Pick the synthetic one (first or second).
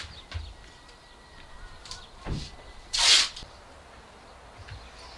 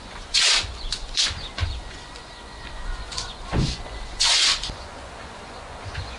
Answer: second